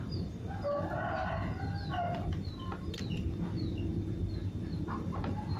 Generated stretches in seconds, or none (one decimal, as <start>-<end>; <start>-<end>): 0.0-1.2; 4.6-5.6